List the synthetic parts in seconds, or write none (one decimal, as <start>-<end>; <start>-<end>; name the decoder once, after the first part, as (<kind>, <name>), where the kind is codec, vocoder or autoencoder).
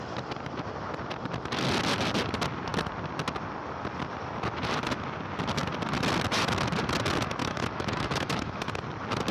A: 7.4-8.7 (autoencoder, DAC-VAE)